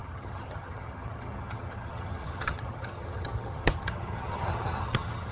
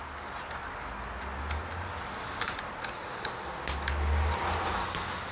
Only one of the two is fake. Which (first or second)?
first